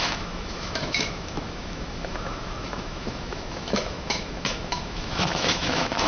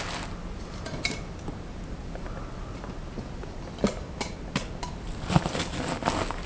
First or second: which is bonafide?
second